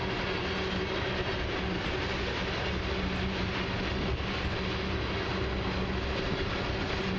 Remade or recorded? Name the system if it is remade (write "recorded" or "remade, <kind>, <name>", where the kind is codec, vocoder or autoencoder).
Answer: recorded